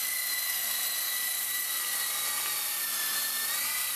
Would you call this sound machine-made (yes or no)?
no